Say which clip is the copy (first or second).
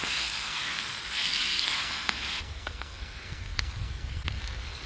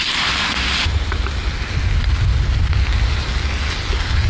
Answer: first